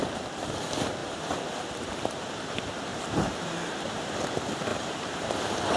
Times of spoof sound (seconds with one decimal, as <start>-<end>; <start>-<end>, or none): 1.0-2.3; 2.9-4.3; 4.7-5.3